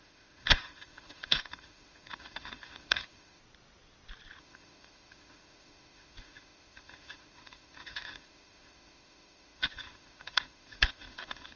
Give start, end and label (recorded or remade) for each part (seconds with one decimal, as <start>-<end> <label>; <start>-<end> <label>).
0.0-3.4 remade; 3.4-4.4 recorded; 4.4-11.6 remade